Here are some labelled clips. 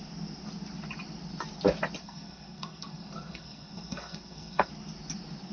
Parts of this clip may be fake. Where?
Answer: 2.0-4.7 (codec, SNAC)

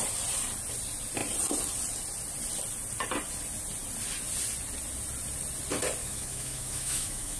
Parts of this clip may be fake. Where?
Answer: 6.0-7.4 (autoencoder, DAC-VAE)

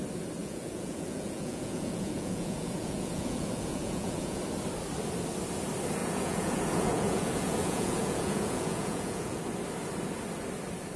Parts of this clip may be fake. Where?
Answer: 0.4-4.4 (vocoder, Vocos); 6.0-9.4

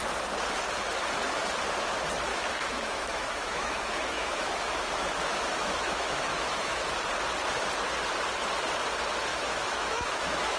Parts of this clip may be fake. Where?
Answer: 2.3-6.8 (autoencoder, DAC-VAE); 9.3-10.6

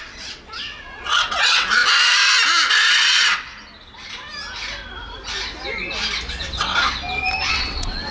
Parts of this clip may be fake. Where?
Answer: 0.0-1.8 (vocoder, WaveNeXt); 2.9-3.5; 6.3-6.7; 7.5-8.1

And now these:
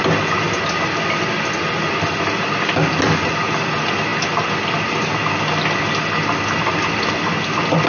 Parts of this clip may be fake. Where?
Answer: none

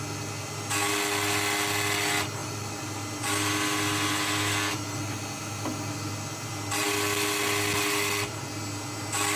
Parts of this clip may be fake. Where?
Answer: none